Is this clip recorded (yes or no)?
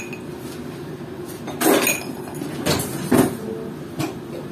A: yes